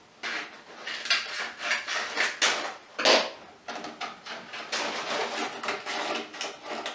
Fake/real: real